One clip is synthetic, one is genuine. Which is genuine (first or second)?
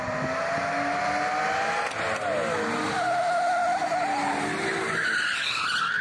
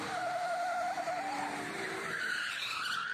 first